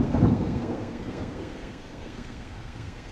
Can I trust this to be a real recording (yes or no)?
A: no